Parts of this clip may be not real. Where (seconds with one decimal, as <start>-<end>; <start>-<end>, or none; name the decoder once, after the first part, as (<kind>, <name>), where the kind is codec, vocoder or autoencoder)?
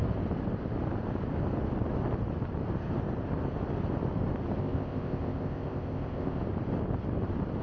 4.6-6.4 (codec, ZipCodec)